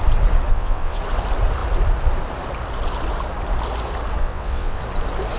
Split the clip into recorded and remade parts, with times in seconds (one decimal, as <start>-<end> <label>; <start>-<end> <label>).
0.0-0.5 recorded; 0.5-1.0 remade; 1.0-4.2 recorded; 4.2-4.8 remade; 4.8-5.4 recorded

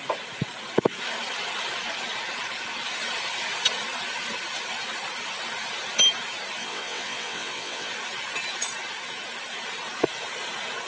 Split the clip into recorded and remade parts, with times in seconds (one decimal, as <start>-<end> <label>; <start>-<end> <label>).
0.0-6.6 recorded; 6.6-7.9 remade; 7.9-10.9 recorded

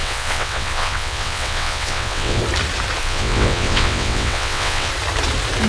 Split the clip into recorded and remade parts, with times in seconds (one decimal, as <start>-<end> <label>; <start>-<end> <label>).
0.0-2.4 remade; 2.4-3.0 recorded; 3.0-4.9 remade; 4.9-5.7 recorded

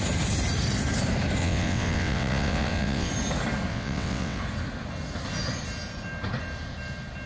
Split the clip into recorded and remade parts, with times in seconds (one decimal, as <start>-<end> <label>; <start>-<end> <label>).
0.0-1.4 recorded; 1.4-3.1 remade; 3.1-3.7 recorded; 3.7-4.4 remade; 4.4-7.3 recorded

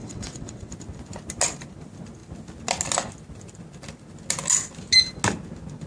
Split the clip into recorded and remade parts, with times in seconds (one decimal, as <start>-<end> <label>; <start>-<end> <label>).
0.0-0.7 remade; 0.7-5.9 recorded